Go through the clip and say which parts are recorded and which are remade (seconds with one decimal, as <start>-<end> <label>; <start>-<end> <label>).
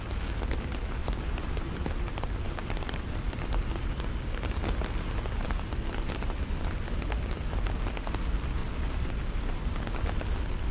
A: 0.0-1.0 recorded; 1.0-3.5 remade; 3.5-8.6 recorded; 8.6-9.8 remade; 9.8-10.7 recorded